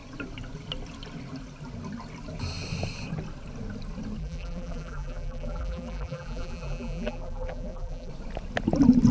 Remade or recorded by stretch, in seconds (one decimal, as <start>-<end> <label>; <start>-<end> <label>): 0.0-4.2 recorded; 4.2-8.1 remade; 8.1-9.1 recorded